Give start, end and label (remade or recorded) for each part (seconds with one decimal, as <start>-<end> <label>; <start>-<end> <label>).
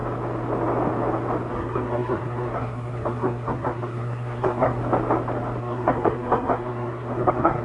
0.0-1.5 recorded; 1.5-4.8 remade; 4.8-5.6 recorded; 5.6-7.6 remade